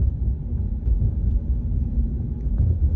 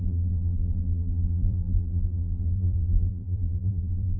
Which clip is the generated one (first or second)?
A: second